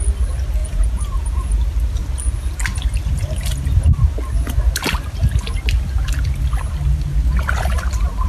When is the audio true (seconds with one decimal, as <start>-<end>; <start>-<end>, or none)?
0.0-0.6; 1.5-8.3